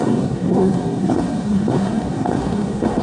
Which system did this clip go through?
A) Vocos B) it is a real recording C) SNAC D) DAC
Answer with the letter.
C